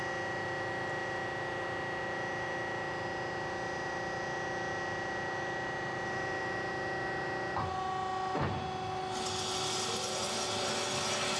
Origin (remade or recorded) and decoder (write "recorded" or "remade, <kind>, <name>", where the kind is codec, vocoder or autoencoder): recorded